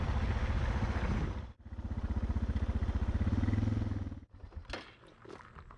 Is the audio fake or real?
real